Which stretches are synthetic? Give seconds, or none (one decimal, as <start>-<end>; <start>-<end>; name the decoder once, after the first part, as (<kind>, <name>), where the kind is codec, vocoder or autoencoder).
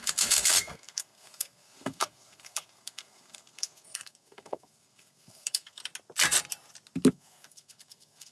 0.0-5.8 (codec, SNAC); 7.1-8.3